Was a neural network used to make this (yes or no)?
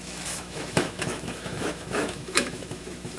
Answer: yes